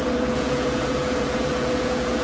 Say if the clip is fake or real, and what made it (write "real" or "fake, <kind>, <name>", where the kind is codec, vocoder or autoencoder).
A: fake, vocoder, Vocos